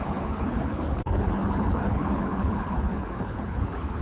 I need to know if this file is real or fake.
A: fake